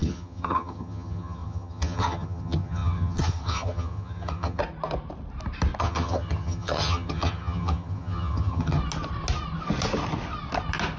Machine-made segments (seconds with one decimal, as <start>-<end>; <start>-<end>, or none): 0.0-4.6; 5.8-8.8